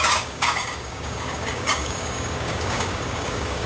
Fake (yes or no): yes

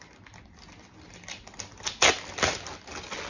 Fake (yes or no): no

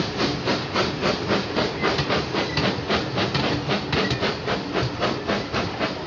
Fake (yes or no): no